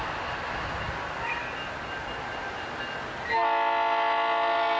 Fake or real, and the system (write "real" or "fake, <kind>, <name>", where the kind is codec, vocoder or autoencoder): real